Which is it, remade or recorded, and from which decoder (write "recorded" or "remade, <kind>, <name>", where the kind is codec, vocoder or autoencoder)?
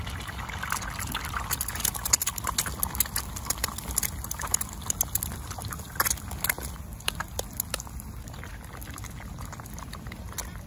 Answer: recorded